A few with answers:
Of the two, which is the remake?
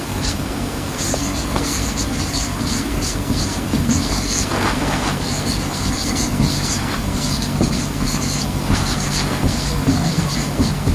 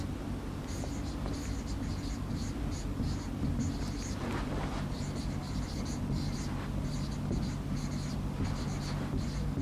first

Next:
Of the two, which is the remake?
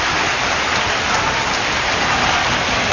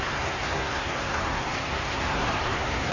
second